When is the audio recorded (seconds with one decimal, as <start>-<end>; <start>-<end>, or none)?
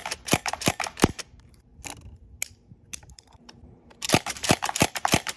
1.7-3.0